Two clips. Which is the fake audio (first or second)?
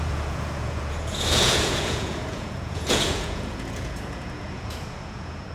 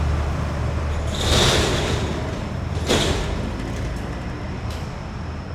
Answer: first